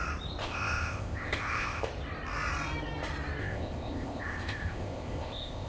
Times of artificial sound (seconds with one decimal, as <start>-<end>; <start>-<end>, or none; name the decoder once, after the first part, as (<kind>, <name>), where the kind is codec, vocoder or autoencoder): 0.4-1.9 (codec, ZipCodec); 3.4-5.7